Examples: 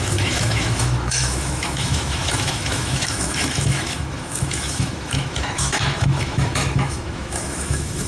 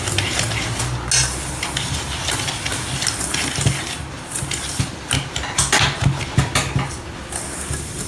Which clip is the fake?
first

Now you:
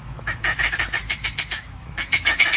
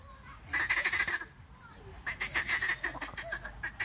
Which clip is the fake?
first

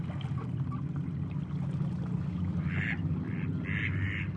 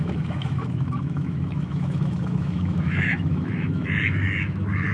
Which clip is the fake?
second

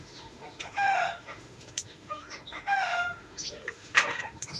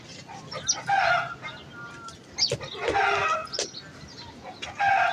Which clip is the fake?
first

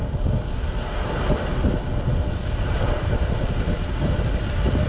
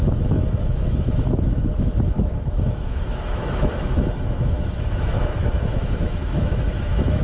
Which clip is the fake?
second